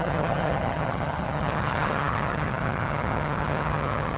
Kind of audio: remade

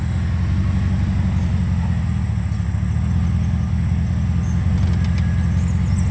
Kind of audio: recorded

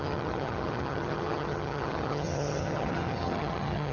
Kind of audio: remade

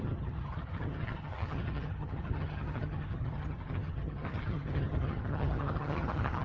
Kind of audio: remade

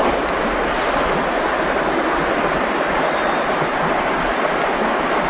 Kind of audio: recorded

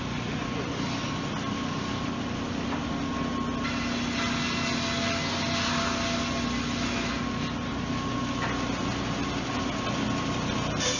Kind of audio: recorded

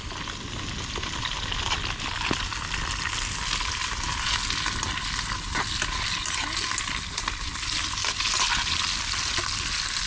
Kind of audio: recorded